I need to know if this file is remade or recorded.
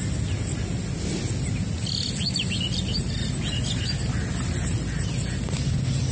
recorded